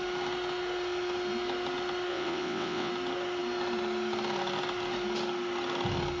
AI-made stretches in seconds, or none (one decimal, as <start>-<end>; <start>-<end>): 2.1-2.9